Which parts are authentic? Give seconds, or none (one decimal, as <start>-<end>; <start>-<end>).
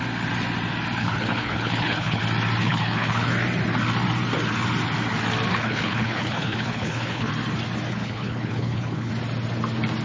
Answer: 0.0-1.0; 2.2-2.6; 3.3-5.5; 7.3-7.9; 9.1-10.0